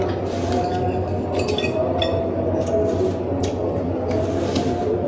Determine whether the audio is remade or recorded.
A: recorded